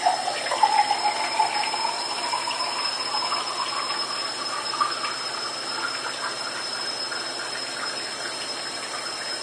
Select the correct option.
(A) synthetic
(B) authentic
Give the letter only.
A